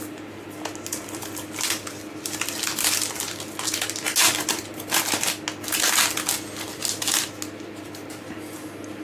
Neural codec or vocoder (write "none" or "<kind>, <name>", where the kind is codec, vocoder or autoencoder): none